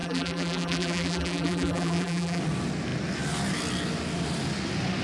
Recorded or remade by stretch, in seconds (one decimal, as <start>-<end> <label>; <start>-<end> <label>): 0.0-2.4 remade; 2.4-5.0 recorded